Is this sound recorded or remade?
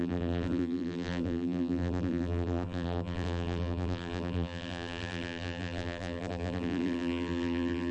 remade